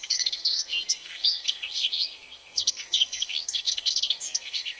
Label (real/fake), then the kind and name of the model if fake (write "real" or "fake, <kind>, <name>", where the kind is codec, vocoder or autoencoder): fake, codec, SNAC